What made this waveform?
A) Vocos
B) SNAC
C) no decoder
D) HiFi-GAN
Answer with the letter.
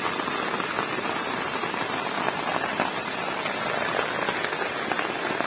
C